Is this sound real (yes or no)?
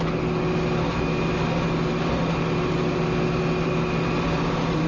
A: yes